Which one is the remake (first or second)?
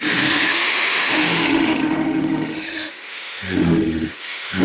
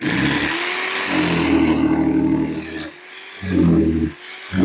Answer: first